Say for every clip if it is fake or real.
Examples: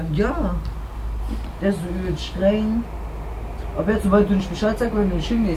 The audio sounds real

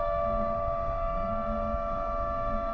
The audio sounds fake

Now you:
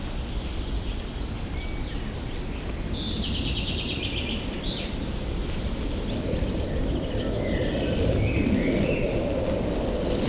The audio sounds real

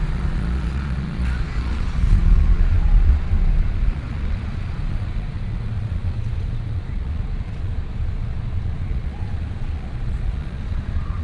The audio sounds fake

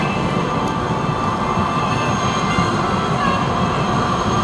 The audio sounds fake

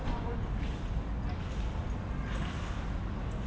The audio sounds real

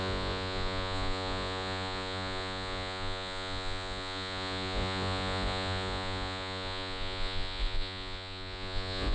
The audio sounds fake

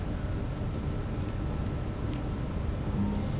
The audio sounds real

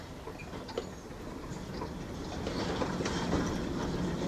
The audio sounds real